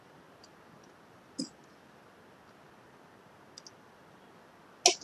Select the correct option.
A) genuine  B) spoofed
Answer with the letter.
A